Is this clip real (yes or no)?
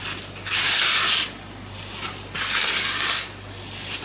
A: yes